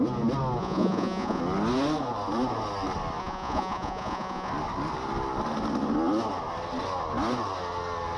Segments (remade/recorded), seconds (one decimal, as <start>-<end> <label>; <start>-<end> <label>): 0.0-0.6 recorded; 0.6-1.4 remade; 1.4-3.2 recorded; 3.2-4.5 remade; 4.5-8.2 recorded